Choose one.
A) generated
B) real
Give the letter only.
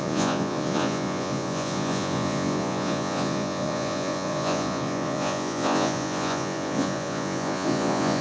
A